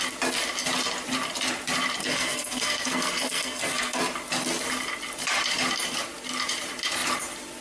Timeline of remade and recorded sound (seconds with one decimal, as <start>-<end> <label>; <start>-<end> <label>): 0.0-2.0 recorded; 2.0-4.0 remade; 4.0-7.6 recorded